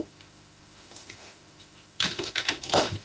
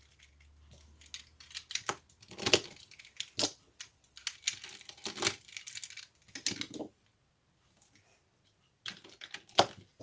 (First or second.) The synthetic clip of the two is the first